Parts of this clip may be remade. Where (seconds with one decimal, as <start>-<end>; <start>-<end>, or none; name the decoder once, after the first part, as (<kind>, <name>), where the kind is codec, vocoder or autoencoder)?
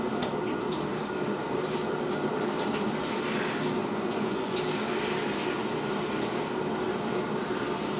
3.8-4.6 (vocoder, Vocos)